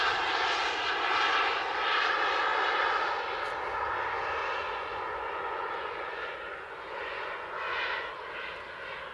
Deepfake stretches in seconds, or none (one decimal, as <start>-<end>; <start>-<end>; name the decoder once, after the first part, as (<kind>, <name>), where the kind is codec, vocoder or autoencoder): 4.4-8.1 (vocoder, Vocos)